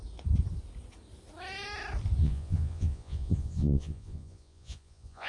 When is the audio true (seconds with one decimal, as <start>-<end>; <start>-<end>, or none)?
0.0-2.2